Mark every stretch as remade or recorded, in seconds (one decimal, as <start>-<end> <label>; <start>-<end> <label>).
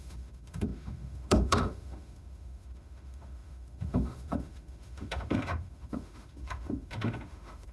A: 0.0-7.7 remade